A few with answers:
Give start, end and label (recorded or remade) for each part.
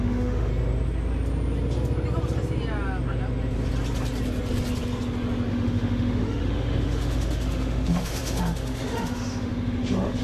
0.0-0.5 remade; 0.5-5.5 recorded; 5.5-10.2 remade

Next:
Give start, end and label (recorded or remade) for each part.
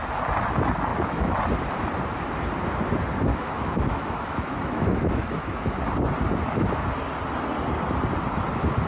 0.0-0.9 recorded; 0.9-1.4 remade; 1.4-3.3 recorded; 3.3-5.8 remade; 5.8-8.9 recorded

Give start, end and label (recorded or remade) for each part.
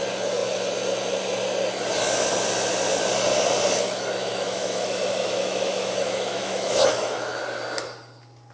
0.0-4.2 recorded; 4.2-7.4 remade; 7.4-8.5 recorded